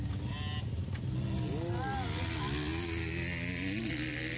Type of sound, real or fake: real